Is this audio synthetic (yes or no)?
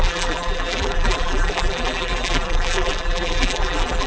yes